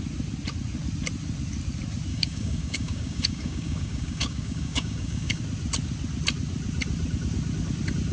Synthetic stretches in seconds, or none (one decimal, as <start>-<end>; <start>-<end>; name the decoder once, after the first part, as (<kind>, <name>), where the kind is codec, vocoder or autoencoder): 2.1-5.4 (codec, DAC)

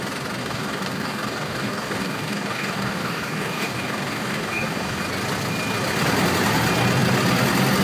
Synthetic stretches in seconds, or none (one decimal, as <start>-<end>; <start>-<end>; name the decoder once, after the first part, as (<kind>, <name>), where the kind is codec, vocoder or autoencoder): 0.4-5.0 (codec, DAC)

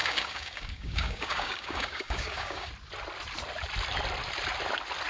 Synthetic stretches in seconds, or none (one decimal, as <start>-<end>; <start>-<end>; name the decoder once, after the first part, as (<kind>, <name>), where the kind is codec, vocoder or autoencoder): 0.0-2.7 (codec, DAC)

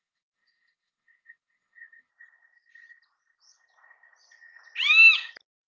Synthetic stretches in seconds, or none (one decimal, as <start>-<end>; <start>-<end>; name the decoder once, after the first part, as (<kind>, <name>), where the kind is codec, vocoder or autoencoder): 0.0-2.1 (codec, DAC)